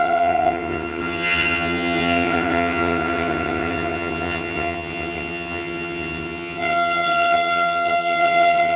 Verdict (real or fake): fake